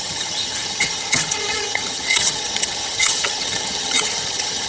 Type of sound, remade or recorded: remade